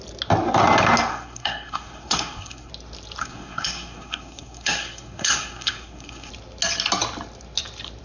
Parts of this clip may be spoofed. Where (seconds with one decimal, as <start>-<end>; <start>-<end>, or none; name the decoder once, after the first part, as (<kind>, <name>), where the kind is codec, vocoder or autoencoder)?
1.1-2.7 (codec, SNAC); 3.2-6.3